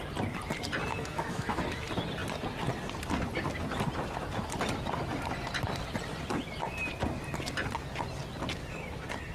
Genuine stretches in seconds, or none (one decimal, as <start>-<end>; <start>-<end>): 0.0-0.9; 1.6-9.3